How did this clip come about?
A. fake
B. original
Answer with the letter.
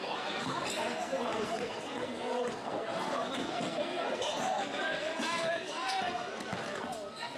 A